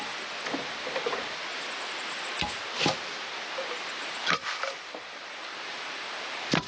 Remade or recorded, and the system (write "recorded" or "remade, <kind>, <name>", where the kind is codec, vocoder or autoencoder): recorded